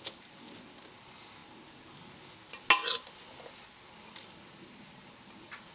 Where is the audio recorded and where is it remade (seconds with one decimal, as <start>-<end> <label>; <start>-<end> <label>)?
0.0-5.7 recorded